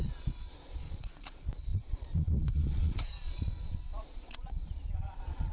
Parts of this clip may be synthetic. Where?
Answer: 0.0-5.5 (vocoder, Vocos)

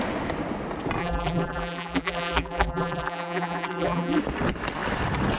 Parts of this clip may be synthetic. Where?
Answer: 1.0-4.2 (vocoder, BigVGAN v2)